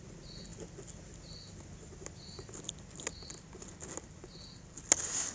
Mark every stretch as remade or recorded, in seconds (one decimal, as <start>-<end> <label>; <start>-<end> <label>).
0.0-5.3 recorded